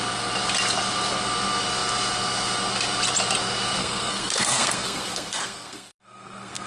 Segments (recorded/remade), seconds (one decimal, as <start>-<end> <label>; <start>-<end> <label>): 0.0-3.8 recorded; 3.8-6.7 remade